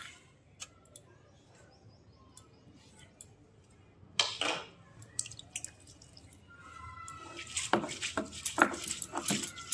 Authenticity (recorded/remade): recorded